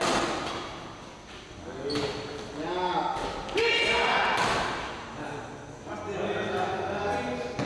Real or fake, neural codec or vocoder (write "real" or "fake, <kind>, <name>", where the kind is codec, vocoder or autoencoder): real